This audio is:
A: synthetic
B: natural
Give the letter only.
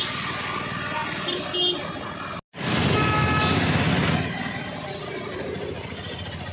B